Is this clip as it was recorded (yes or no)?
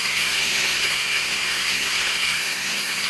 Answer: no